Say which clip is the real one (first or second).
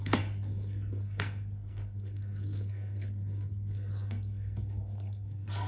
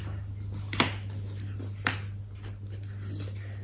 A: second